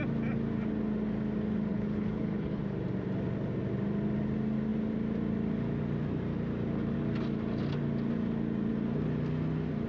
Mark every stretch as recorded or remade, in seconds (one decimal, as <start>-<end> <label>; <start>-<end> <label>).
0.0-1.7 recorded; 1.7-2.6 remade; 2.6-9.9 recorded